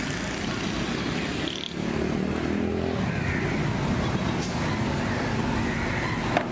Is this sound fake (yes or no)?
no